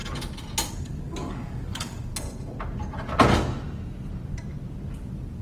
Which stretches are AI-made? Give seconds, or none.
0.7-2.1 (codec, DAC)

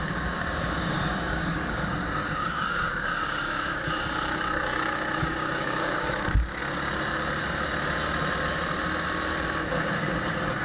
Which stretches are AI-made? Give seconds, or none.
0.0-6.6 (codec, DAC)

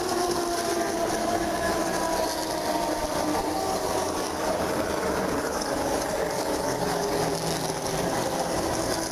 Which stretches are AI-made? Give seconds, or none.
1.2-1.8 (codec, DAC); 3.4-7.2

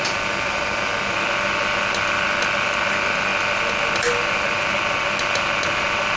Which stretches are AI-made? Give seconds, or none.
none

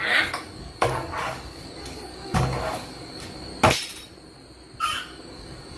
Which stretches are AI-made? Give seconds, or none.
0.0-3.5 (codec, DAC); 4.8-5.8

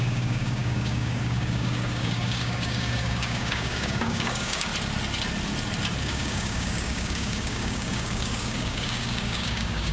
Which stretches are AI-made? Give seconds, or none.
0.0-4.7 (codec, DAC); 6.0-9.9